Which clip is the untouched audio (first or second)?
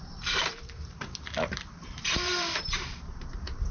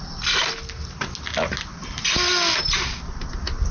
second